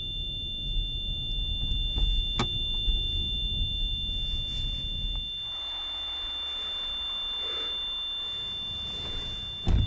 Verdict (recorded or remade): recorded